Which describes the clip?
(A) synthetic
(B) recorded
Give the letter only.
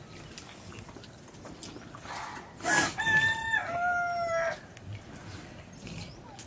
B